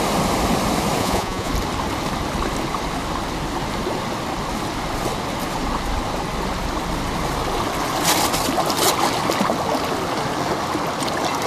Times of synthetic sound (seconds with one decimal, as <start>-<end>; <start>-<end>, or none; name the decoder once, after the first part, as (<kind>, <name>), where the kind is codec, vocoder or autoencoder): 1.0-1.5 (vocoder, Vocos)